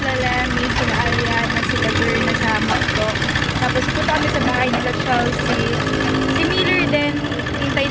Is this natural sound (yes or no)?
yes